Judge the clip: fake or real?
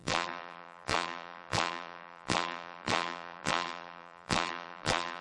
fake